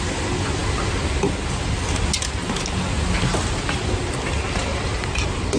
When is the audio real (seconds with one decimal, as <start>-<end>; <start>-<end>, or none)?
0.0-4.7